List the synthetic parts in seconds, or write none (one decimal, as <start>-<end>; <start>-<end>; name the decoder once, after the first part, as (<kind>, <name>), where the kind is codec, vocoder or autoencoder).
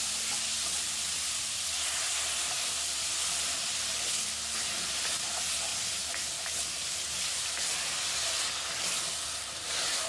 0.5-4.5 (vocoder, BigVGAN v2); 5.7-10.1